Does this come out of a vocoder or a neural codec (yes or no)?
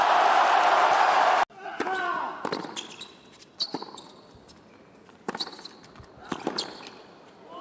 no